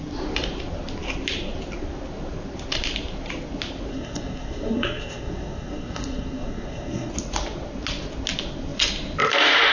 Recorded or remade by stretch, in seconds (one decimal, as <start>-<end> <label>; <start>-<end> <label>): 0.0-3.9 recorded; 3.9-7.1 remade; 7.1-9.7 recorded